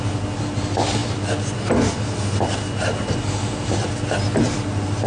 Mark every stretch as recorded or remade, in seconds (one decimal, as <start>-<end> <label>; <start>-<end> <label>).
0.0-5.1 recorded